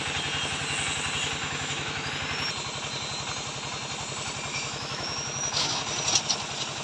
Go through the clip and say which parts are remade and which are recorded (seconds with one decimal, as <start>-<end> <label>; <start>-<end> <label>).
0.0-1.4 recorded; 1.4-2.1 remade; 2.1-4.5 recorded; 4.5-5.8 remade; 5.8-6.8 recorded